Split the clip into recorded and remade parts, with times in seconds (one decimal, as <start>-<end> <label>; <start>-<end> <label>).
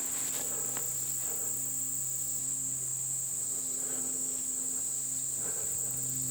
0.0-6.3 recorded